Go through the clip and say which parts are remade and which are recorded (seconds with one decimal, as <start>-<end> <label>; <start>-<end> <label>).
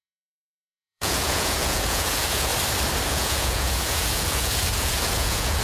0.0-2.5 remade; 2.5-3.1 recorded; 3.1-5.6 remade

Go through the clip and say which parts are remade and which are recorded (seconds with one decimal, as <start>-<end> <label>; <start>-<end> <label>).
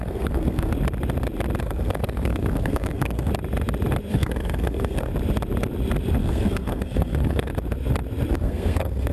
0.0-0.7 remade; 0.7-1.6 recorded; 1.6-3.3 remade; 3.3-4.1 recorded; 4.1-5.1 remade; 5.1-6.2 recorded; 6.2-7.5 remade; 7.5-8.3 recorded; 8.3-9.1 remade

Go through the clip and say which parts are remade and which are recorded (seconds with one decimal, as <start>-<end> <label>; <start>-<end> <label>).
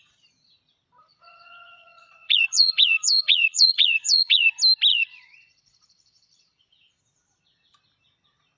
0.0-1.0 recorded; 1.0-4.5 remade; 4.5-4.9 recorded; 4.9-7.0 remade; 7.0-8.6 recorded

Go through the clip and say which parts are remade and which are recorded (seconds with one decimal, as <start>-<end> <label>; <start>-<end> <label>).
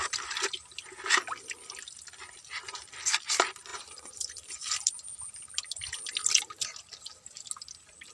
0.0-3.7 recorded; 3.7-5.7 remade; 5.7-8.1 recorded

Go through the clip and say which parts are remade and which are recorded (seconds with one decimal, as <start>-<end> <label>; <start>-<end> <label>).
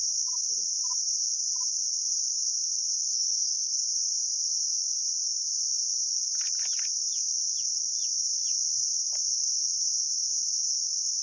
0.0-3.1 recorded; 3.1-3.7 remade; 3.7-11.2 recorded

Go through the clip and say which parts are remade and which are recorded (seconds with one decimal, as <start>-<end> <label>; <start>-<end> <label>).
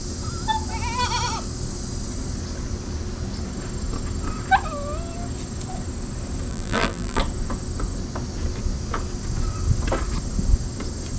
0.0-6.5 recorded; 6.5-7.2 remade; 7.2-11.2 recorded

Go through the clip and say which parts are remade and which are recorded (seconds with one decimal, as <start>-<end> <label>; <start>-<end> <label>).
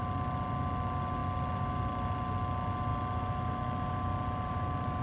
0.0-5.0 recorded